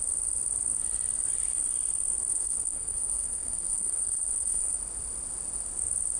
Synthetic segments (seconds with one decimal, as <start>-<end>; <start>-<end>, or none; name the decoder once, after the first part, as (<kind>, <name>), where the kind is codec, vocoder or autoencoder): 2.3-4.7 (codec, SNAC)